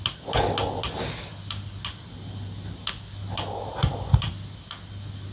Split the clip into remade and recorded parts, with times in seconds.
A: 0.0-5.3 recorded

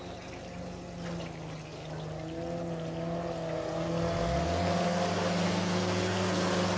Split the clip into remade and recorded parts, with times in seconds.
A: 0.0-6.8 recorded

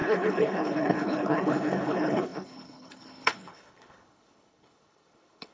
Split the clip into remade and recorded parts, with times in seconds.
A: 0.0-5.5 remade

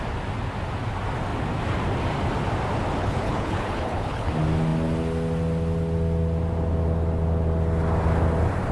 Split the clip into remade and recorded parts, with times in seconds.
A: 0.0-3.0 recorded; 3.0-4.3 remade; 4.3-8.7 recorded

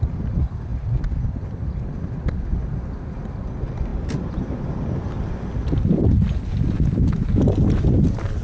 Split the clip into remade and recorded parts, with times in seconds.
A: 0.0-8.4 recorded

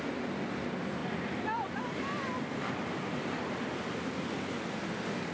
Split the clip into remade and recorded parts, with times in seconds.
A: 0.0-5.3 recorded

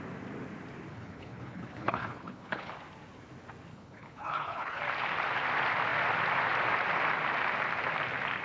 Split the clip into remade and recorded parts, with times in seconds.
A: 0.0-0.9 recorded; 0.9-2.7 remade; 2.7-3.7 recorded; 3.7-4.8 remade; 4.8-8.4 recorded

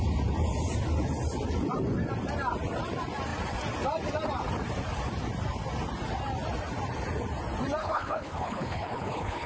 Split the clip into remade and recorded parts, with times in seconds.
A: 0.0-7.8 recorded; 7.8-9.5 remade